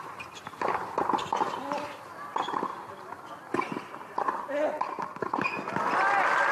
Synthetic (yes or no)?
no